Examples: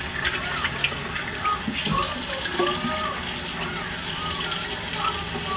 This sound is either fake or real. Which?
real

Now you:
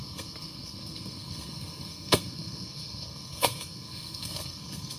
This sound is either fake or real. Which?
fake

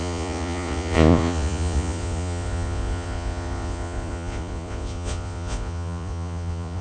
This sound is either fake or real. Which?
fake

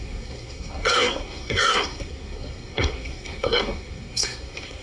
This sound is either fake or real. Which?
fake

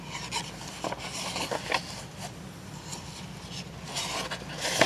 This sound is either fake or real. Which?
real